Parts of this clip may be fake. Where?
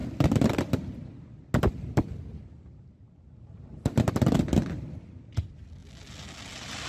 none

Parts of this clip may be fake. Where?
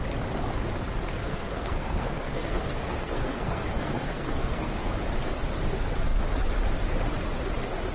1.2-4.9 (codec, SNAC)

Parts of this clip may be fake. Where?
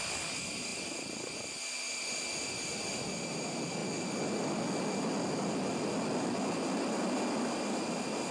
none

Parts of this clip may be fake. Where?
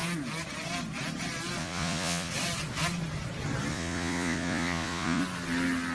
1.6-2.3 (vocoder, Vocos); 3.7-5.2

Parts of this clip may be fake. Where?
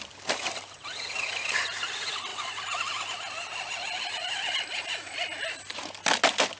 none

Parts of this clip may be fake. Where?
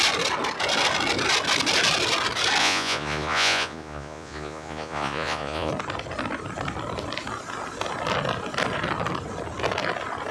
2.6-5.7 (vocoder, Vocos)